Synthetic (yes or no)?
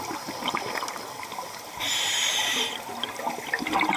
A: no